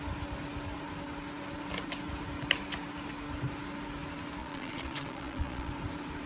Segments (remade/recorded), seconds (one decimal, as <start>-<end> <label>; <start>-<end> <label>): 0.0-4.4 recorded; 4.4-5.7 remade; 5.7-6.3 recorded

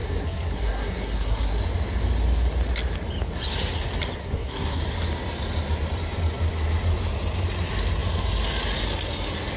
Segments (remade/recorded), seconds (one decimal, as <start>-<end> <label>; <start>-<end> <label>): 0.0-1.6 remade; 1.6-4.2 recorded; 4.2-4.8 remade; 4.8-9.6 recorded

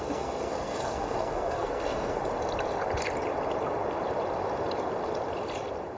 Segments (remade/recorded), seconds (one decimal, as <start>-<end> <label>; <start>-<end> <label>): 0.0-2.2 remade; 2.2-6.0 recorded

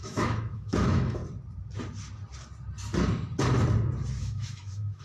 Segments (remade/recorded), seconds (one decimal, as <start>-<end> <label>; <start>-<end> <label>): 0.0-1.2 remade; 1.2-4.2 recorded; 4.2-5.0 remade

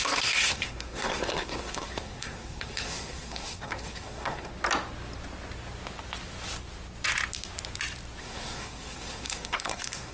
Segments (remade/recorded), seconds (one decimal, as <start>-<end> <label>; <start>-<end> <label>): 0.0-4.5 remade; 4.5-8.2 recorded; 8.2-10.1 remade

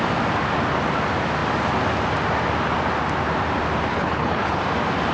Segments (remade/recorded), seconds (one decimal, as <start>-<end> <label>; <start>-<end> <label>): 0.0-3.9 recorded; 3.9-4.6 remade; 4.6-5.1 recorded

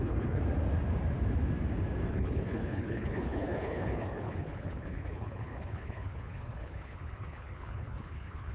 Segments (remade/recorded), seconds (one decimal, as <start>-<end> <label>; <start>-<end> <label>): 0.0-0.4 remade; 0.4-2.1 recorded; 2.1-8.5 remade

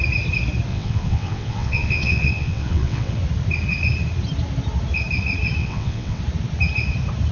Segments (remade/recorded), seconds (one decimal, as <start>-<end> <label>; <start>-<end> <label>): 0.0-0.7 recorded; 0.7-3.2 remade; 3.2-5.6 recorded; 5.6-6.2 remade; 6.2-7.3 recorded